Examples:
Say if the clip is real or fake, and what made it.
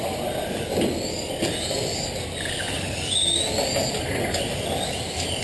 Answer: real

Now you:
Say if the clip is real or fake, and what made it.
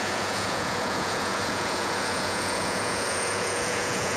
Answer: fake, vocoder, Vocos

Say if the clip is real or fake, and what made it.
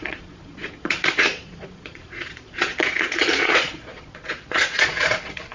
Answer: fake, vocoder, Vocos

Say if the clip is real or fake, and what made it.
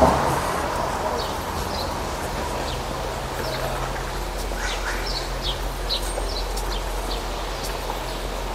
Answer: real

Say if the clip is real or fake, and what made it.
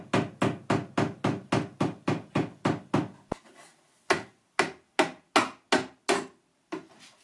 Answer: real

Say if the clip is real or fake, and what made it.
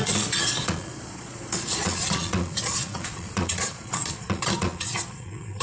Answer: fake, vocoder, Vocos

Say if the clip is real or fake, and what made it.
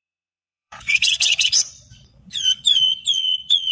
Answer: fake, vocoder, Vocos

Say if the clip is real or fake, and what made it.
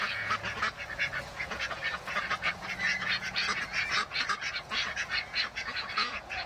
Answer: fake, vocoder, Vocos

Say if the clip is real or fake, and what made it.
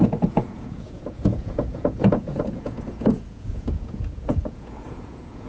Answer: fake, vocoder, Vocos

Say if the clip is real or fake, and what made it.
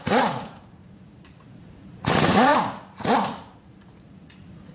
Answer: fake, vocoder, Vocos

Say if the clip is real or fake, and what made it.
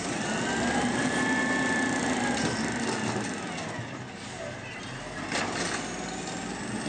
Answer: real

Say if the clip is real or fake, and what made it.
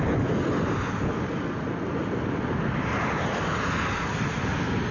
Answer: real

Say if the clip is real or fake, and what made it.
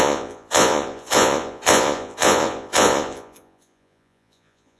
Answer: fake, vocoder, Vocos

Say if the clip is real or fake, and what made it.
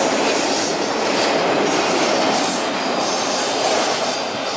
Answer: real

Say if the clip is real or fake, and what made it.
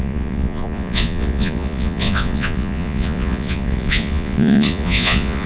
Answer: fake, vocoder, Vocos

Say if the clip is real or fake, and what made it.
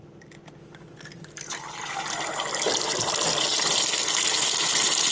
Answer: real